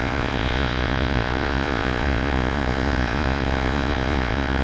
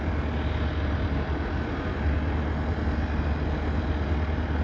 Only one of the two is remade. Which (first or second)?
first